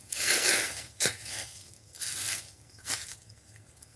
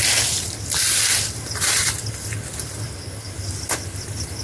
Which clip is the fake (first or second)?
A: first